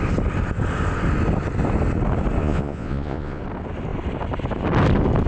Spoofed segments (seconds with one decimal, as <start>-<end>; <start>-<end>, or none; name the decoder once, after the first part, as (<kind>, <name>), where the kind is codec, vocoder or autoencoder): 2.4-3.4 (vocoder, Vocos)